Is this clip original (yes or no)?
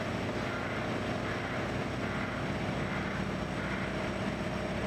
yes